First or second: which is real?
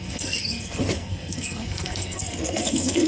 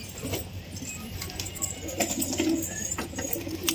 second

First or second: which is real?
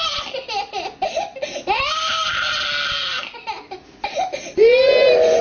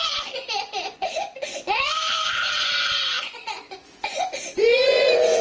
first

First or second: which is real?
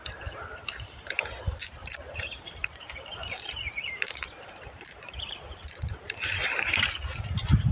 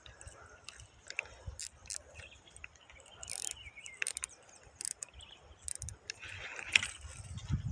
second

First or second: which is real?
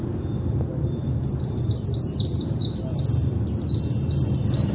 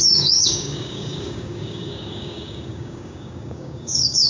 first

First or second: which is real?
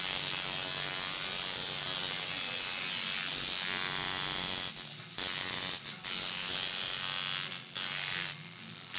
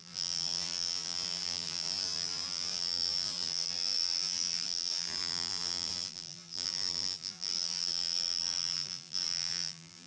first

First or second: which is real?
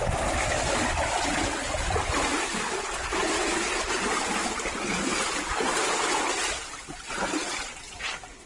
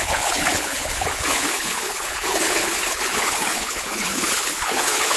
first